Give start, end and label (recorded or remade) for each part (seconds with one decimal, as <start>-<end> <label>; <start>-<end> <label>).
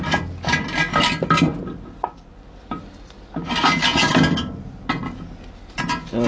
0.0-2.3 recorded; 2.3-2.8 remade; 2.8-6.3 recorded